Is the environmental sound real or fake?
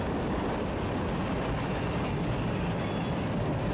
real